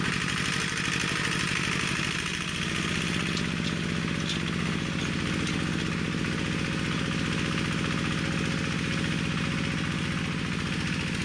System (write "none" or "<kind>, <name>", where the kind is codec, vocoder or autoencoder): none